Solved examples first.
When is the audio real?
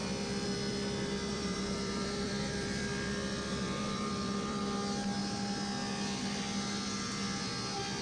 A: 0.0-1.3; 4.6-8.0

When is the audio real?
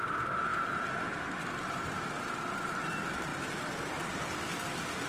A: 0.0-0.5; 2.9-5.1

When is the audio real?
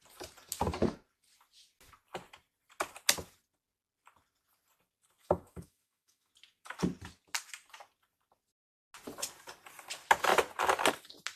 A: 0.0-5.2; 6.3-11.4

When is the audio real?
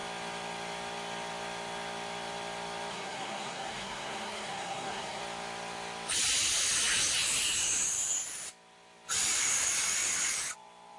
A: 0.0-2.9; 5.2-11.0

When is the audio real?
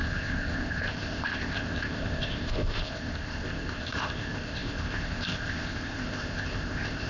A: none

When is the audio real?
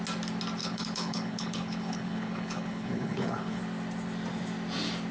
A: 0.0-0.6; 3.6-5.1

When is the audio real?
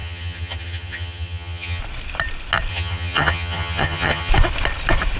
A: 1.8-2.7; 4.3-5.2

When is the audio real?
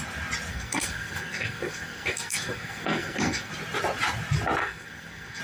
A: 0.0-0.5; 3.5-4.6